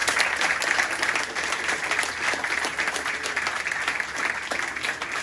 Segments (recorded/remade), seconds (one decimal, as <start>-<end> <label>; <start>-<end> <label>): 0.0-5.2 recorded